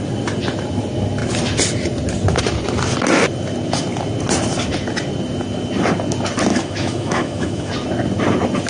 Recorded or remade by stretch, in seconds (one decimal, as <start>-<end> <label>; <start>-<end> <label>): 0.0-6.5 recorded; 6.5-7.7 remade; 7.7-8.7 recorded